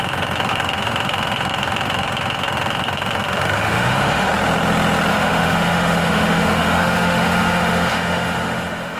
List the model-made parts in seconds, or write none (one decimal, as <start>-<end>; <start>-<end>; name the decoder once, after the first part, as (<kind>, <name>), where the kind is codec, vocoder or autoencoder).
0.0-4.3 (autoencoder, DAC-VAE); 5.1-9.0